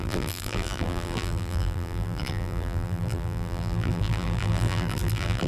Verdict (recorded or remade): remade